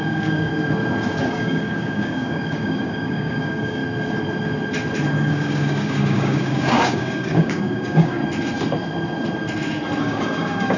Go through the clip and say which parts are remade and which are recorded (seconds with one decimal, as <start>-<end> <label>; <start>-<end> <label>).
0.0-0.5 remade; 0.5-1.2 recorded; 1.2-3.8 remade; 3.8-5.3 recorded; 5.3-8.2 remade; 8.2-10.0 recorded; 10.0-10.8 remade